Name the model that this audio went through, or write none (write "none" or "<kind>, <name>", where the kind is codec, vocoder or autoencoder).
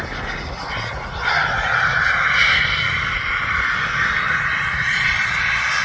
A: none